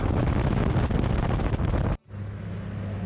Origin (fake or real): real